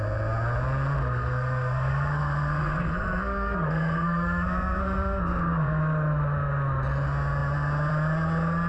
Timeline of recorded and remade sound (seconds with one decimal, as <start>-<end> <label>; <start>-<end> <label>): 0.0-1.0 recorded; 1.0-5.8 remade; 5.8-8.7 recorded